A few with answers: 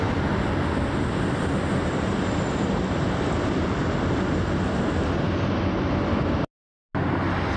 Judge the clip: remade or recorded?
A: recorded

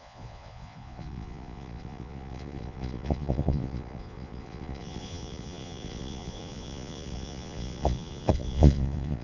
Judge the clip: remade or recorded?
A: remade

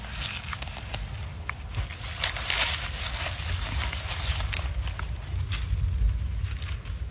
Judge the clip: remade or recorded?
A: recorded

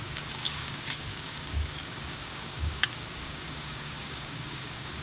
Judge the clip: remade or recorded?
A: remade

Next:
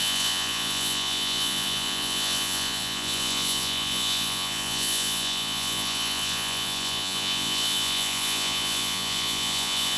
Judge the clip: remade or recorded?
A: remade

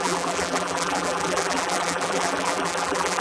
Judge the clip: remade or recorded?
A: remade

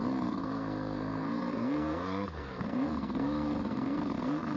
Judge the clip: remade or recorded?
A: remade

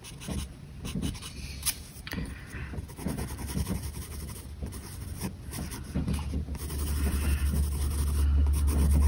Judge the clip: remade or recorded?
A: recorded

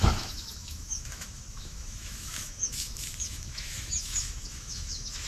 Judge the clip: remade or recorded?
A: remade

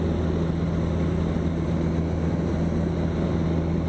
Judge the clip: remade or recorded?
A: recorded